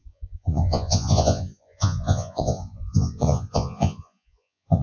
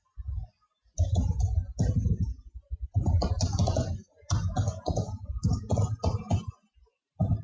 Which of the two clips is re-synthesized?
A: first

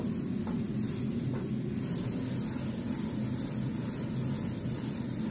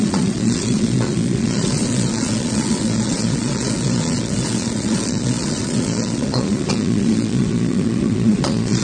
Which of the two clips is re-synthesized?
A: second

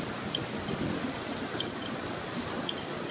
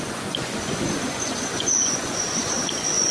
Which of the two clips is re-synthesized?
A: second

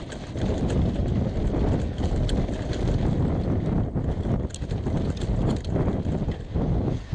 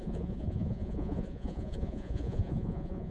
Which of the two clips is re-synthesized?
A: second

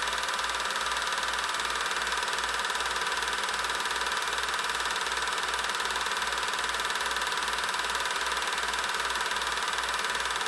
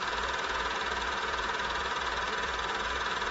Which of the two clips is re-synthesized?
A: second